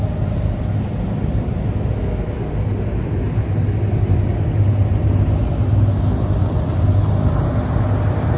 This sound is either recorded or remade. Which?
recorded